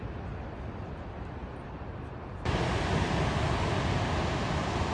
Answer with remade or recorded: recorded